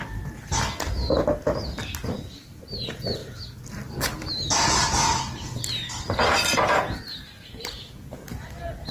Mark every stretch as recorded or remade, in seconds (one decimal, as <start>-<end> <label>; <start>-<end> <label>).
0.0-8.9 recorded